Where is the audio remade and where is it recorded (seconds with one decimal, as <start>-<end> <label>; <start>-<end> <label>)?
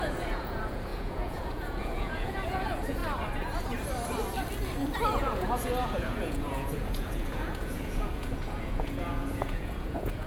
0.0-3.0 remade; 3.0-5.2 recorded; 5.2-10.3 remade